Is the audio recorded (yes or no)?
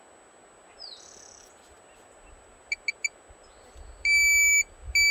yes